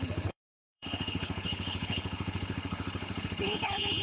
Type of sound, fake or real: fake